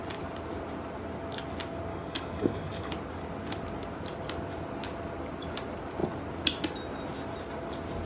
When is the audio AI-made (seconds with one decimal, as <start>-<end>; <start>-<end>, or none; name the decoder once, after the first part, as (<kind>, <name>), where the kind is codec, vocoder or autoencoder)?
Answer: 1.9-2.9 (codec, DAC)